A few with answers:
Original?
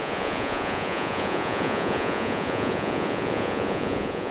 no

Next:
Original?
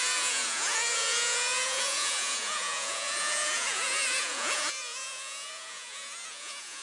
no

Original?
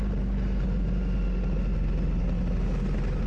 yes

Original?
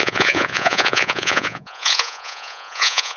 no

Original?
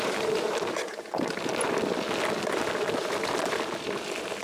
yes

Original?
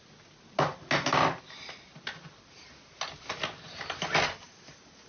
yes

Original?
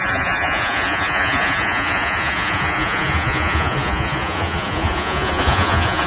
no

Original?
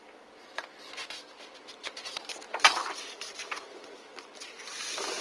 yes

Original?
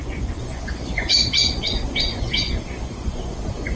no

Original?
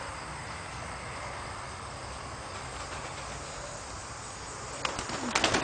yes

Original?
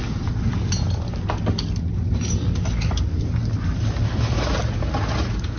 yes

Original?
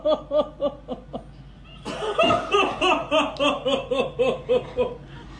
yes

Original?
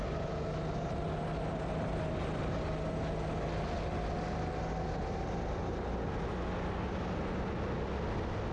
yes